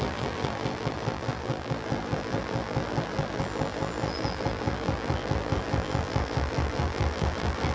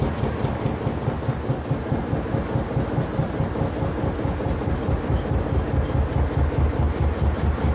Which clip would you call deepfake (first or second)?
first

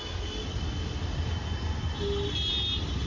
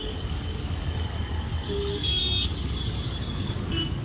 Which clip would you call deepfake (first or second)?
second